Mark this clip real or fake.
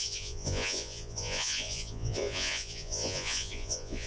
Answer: fake